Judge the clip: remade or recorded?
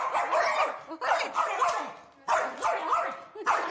recorded